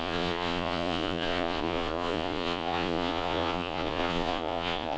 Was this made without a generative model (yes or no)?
no